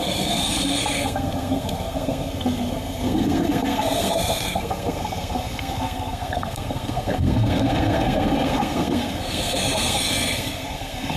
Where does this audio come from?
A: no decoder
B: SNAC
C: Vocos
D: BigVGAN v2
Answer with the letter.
B